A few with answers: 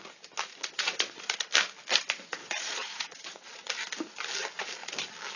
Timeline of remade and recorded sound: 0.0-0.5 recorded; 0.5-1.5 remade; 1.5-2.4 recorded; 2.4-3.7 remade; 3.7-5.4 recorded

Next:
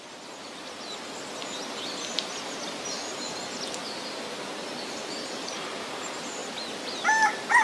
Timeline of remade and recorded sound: 0.0-7.6 recorded

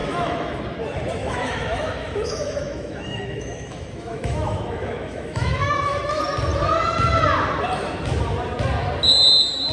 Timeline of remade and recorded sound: 0.0-0.6 remade; 0.6-1.2 recorded; 1.2-6.1 remade; 6.1-9.7 recorded

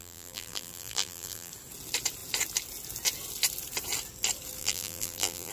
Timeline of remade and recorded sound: 0.0-1.5 remade; 1.5-4.6 recorded; 4.6-5.5 remade

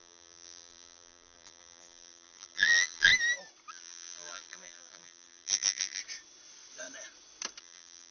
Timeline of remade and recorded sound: 0.0-3.1 remade; 3.1-3.7 recorded; 3.7-6.0 remade; 6.0-7.6 recorded; 7.6-8.1 remade

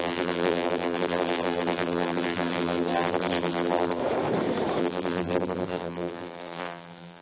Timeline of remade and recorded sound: 0.0-4.0 remade; 4.0-4.8 recorded; 4.8-7.2 remade

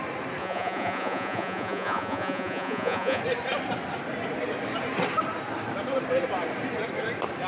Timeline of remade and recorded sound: 0.0-0.4 recorded; 0.4-3.2 remade; 3.2-7.5 recorded

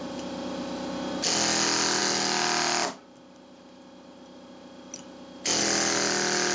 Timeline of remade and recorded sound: 0.0-6.5 recorded